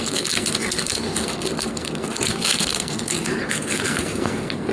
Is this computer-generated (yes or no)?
yes